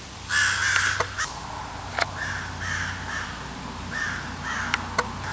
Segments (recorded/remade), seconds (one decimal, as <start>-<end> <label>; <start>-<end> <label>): 0.0-5.3 recorded